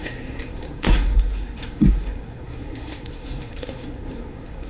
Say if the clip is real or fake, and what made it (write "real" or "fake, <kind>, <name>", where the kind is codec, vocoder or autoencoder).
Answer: fake, codec, SNAC